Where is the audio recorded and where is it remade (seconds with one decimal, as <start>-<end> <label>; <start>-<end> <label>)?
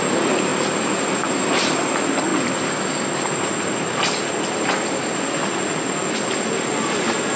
0.0-7.4 recorded